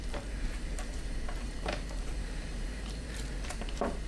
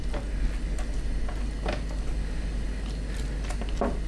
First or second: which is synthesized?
first